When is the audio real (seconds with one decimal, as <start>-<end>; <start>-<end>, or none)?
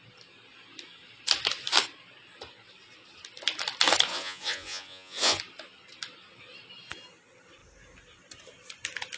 0.0-4.1; 5.4-9.2